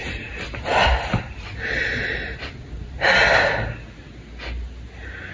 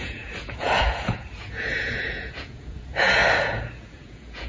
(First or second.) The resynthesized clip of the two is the second